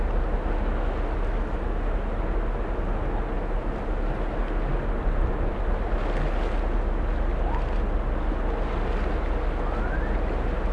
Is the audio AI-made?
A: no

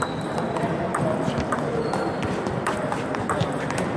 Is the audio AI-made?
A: no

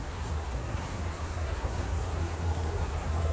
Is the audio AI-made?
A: yes